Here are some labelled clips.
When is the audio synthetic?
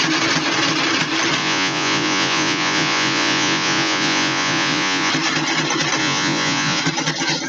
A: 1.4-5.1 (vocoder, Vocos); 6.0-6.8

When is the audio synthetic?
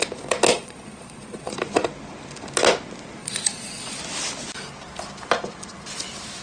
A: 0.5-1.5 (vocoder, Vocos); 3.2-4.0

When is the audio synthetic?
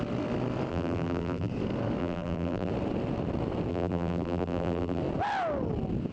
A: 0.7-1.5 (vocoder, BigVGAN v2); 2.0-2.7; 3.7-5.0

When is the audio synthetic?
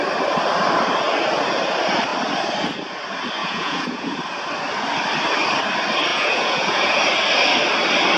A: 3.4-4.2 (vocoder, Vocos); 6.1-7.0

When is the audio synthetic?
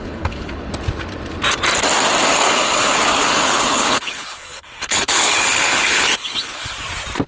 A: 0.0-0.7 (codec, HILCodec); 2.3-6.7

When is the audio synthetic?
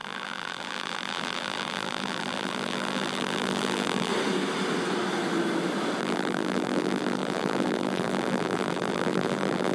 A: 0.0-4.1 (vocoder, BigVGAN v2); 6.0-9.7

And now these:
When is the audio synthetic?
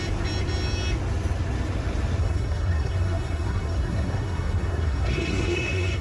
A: 2.2-6.0 (codec, SNAC)